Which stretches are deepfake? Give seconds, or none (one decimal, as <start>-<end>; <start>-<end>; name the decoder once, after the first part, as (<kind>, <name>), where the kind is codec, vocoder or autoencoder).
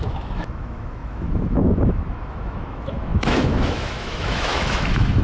0.0-5.2 (autoencoder, DAC-VAE)